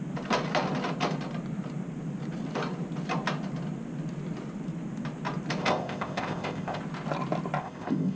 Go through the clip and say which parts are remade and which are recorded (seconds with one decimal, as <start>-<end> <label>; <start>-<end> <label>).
0.0-5.6 recorded; 5.6-6.8 remade; 6.8-7.6 recorded; 7.6-8.2 remade